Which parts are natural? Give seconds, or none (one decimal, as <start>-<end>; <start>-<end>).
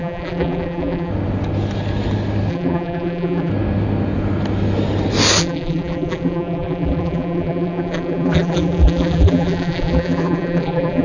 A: 1.1-2.5; 3.5-5.4